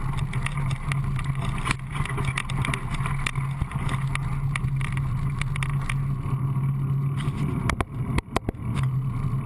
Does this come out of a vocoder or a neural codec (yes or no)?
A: no